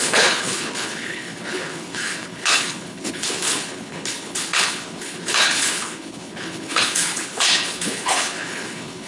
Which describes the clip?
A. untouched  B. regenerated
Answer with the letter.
B